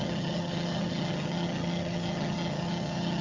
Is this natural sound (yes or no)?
no